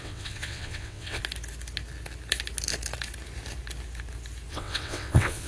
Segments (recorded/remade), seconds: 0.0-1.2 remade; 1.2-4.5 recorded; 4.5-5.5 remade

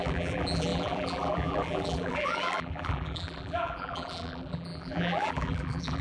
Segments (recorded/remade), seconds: 0.0-6.0 remade

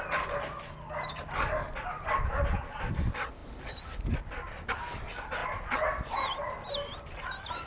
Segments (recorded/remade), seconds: 0.0-7.7 recorded

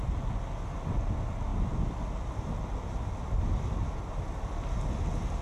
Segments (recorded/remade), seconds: 0.0-5.4 recorded

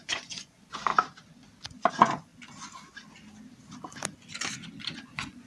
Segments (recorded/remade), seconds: 0.0-0.9 remade; 0.9-1.9 recorded; 1.9-2.3 remade; 2.3-5.0 recorded; 5.0-5.5 remade

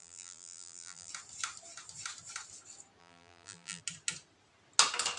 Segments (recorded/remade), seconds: 0.0-1.1 remade; 1.1-3.0 recorded; 3.0-3.8 remade; 3.8-5.2 recorded

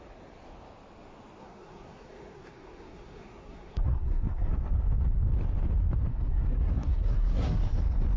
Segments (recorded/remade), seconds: 0.0-1.4 recorded; 1.4-4.5 remade; 4.5-6.1 recorded; 6.1-7.6 remade; 7.6-8.2 recorded

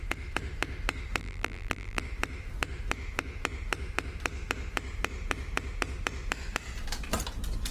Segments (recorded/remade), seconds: 0.0-1.2 recorded; 1.2-2.0 remade; 2.0-7.7 recorded